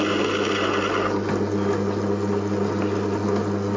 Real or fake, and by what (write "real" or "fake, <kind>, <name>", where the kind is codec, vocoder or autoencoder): real